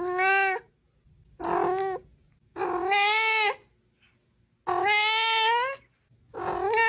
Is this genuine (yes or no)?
yes